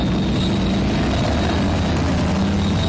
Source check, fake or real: real